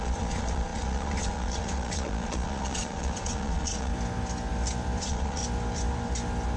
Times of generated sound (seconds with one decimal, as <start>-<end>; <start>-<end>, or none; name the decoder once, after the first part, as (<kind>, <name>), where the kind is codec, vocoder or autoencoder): 0.0-3.9 (vocoder, Vocos); 5.0-5.4